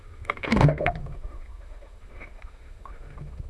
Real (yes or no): no